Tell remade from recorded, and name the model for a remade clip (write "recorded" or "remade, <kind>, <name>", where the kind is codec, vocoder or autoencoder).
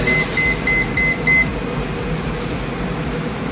recorded